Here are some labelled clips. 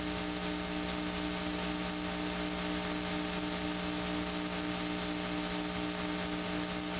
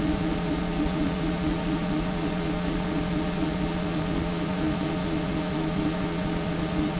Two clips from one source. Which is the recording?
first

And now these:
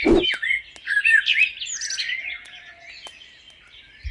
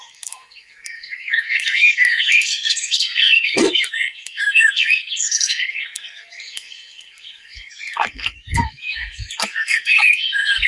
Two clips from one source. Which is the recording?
first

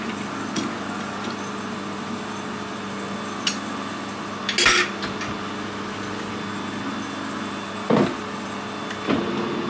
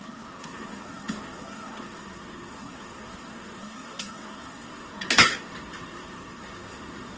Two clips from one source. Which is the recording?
first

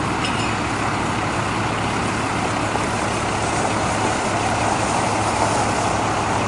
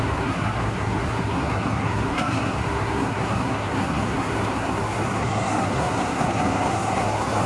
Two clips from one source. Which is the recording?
first